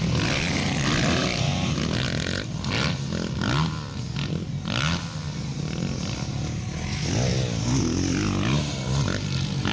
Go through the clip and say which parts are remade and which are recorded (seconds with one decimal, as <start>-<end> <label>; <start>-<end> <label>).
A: 0.0-9.7 recorded